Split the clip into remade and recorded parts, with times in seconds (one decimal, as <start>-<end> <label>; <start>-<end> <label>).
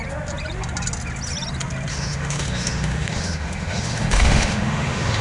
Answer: 0.0-1.9 recorded; 1.9-5.2 remade